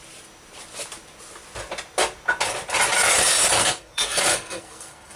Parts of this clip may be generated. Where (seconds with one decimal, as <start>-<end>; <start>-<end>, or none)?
3.6-5.2